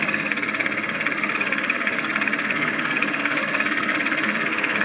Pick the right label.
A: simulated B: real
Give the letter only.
A